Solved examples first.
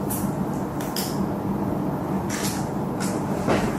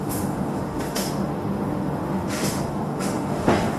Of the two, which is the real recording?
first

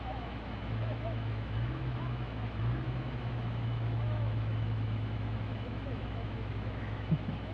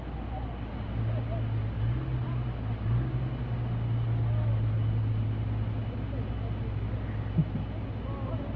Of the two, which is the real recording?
second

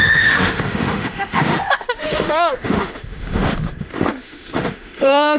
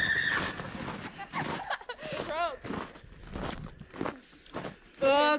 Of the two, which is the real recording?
second